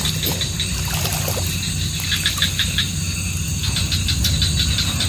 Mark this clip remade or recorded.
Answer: recorded